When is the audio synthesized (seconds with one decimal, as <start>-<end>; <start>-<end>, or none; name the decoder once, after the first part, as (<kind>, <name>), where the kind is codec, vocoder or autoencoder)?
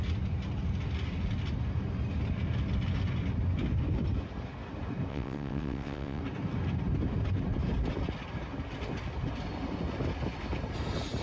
5.1-6.2 (vocoder, WaveNeXt)